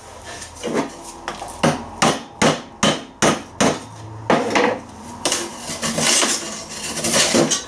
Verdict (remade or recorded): recorded